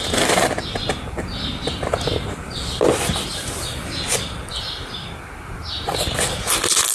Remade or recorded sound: recorded